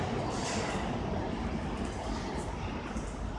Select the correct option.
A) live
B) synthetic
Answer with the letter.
A